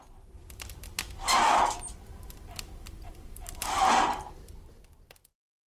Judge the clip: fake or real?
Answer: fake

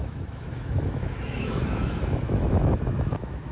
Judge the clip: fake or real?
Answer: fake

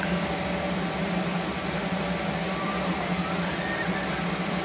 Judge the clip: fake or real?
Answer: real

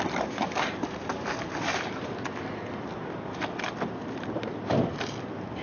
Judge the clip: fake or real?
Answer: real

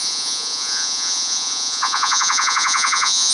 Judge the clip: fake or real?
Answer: fake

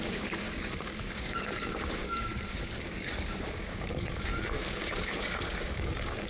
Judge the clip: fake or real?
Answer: fake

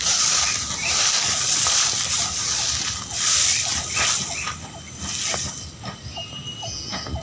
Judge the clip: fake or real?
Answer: real